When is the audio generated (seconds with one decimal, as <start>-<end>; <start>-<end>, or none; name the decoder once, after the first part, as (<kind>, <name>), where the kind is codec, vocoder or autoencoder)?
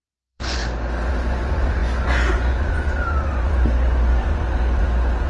0.0-0.6 (vocoder, Vocos); 1.1-5.3